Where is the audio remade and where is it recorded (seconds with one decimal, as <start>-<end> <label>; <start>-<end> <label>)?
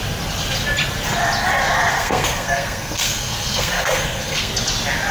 0.0-1.9 recorded; 1.9-4.5 remade; 4.5-5.1 recorded